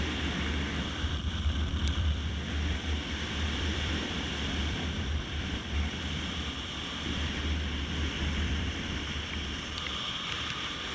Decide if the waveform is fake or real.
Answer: fake